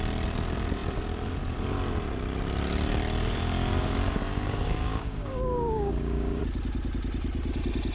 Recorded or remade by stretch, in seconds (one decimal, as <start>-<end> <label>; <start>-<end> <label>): 0.0-3.2 recorded; 3.2-6.4 remade; 6.4-7.9 recorded